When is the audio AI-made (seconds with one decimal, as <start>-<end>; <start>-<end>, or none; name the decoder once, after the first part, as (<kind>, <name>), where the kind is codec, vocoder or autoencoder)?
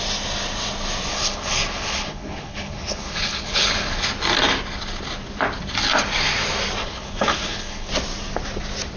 1.1-4.0 (codec, HILCodec); 6.8-7.9